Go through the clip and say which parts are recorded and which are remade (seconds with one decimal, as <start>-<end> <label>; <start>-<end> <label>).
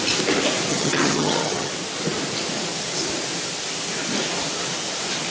0.0-0.7 recorded; 0.7-1.7 remade; 1.7-5.3 recorded